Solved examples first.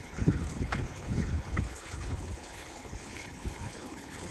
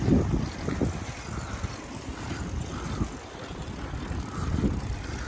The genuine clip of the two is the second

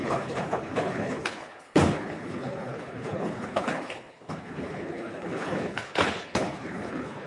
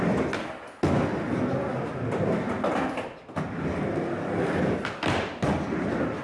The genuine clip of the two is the second